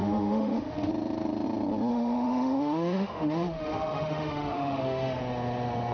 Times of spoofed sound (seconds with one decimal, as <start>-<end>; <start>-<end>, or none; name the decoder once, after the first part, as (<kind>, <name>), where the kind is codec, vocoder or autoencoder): 0.0-0.9 (autoencoder, DAC-VAE); 1.9-5.2